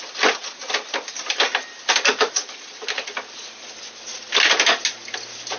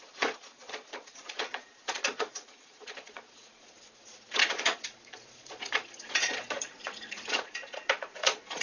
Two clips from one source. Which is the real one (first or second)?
first